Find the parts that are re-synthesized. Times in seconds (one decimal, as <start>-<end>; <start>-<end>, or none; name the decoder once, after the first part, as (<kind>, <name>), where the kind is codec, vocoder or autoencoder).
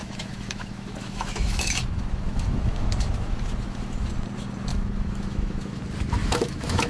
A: 0.0-4.1 (autoencoder, DAC-VAE); 4.7-5.8; 6.2-6.9